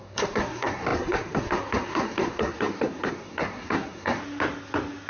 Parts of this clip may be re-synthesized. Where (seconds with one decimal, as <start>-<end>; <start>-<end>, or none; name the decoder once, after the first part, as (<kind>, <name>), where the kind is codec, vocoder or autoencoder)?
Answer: 0.0-4.2 (codec, SNAC)